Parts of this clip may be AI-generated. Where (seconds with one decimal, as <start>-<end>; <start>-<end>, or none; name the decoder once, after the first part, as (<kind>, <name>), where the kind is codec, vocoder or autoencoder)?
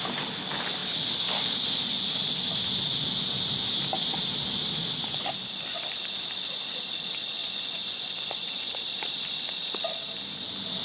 7.4-8.7 (vocoder, Vocos)